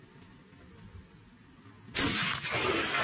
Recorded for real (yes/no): yes